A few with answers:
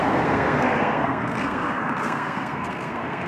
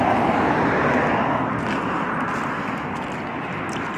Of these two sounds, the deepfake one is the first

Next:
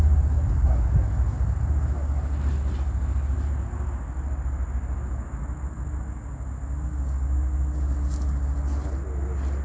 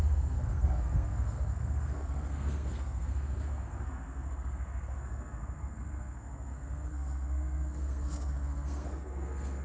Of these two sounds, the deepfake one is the second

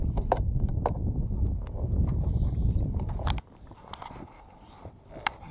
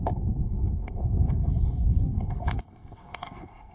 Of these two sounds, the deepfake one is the second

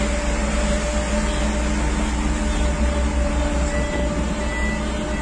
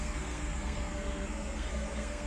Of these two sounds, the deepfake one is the second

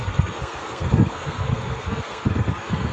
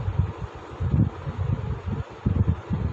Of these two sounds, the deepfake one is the first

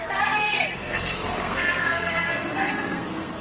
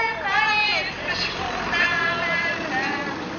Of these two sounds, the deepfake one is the first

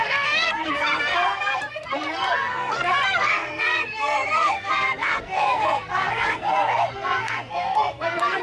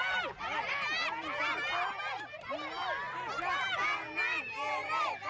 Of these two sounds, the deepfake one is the first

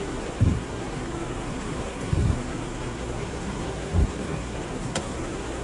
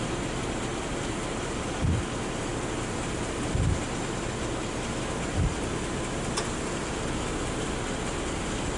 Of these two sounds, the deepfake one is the first